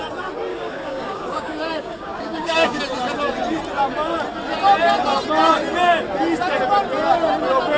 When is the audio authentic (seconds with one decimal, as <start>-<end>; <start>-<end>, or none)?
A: 0.0-0.5; 2.8-7.8